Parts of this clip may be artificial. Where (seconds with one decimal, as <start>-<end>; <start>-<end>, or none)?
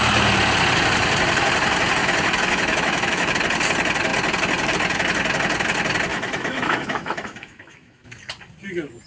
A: 2.0-3.3; 6.1-8.1